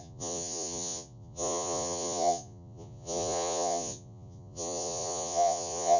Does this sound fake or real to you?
fake